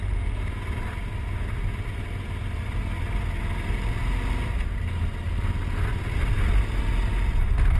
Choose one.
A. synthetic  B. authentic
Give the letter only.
B